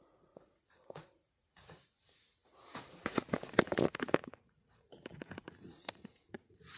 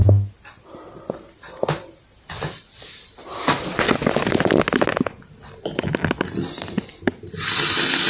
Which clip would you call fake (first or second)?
first